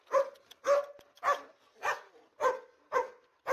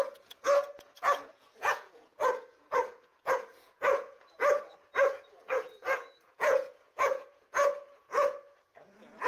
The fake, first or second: second